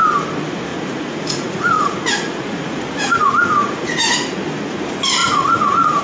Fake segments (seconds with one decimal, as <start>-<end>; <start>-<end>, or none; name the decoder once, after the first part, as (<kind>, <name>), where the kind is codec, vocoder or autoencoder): 0.7-4.3 (vocoder, Vocos); 5.2-6.0